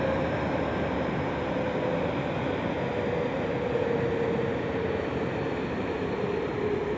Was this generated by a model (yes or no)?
no